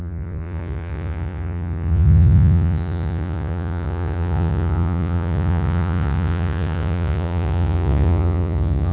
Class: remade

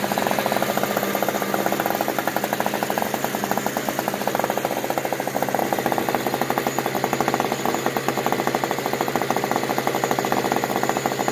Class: recorded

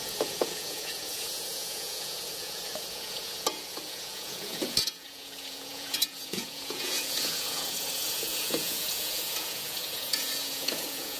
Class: remade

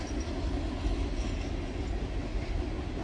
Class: recorded